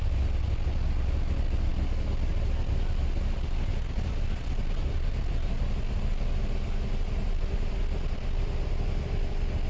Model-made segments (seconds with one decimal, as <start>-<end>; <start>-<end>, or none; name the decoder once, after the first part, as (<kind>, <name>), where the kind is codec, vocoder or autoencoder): none